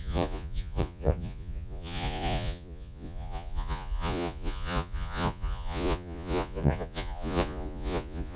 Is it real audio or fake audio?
fake